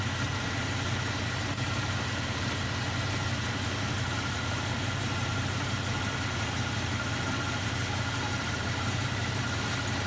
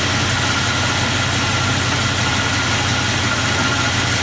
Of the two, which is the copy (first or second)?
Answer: first